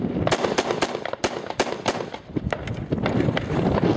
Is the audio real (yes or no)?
yes